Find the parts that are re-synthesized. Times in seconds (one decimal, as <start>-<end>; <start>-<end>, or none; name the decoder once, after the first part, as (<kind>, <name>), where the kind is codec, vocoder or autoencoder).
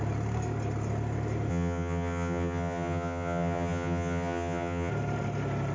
1.5-4.9 (vocoder, HiFi-GAN)